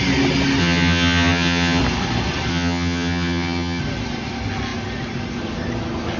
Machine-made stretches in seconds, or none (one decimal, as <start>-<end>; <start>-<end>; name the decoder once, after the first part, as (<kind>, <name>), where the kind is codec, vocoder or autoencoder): 0.6-1.8 (vocoder, HiFi-GAN); 2.5-3.8

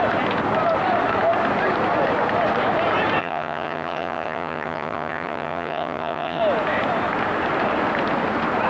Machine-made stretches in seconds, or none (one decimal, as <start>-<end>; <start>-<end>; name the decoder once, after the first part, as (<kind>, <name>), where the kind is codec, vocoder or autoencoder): 3.2-6.4 (vocoder, HiFi-GAN)